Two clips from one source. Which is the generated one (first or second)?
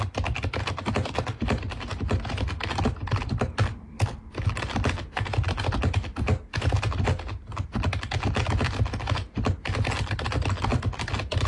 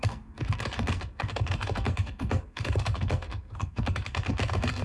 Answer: second